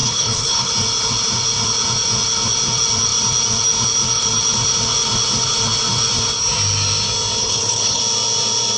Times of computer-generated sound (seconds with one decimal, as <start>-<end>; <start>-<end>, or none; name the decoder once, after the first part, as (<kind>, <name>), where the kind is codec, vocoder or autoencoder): 0.0-0.7 (codec, HILCodec); 7.4-8.0